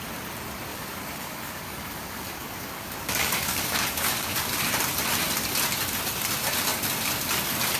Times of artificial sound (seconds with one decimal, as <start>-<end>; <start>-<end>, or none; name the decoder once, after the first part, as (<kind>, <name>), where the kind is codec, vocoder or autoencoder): 0.7-4.6 (codec, DAC)